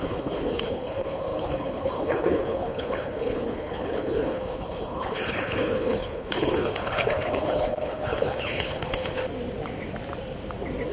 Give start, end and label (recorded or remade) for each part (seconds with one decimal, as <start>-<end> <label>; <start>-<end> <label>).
0.0-9.2 remade; 9.2-10.9 recorded